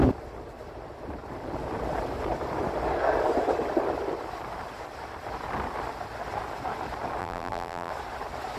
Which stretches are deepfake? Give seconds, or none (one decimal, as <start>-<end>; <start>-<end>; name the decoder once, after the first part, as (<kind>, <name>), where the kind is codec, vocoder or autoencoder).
7.2-7.9 (vocoder, BigVGAN v2)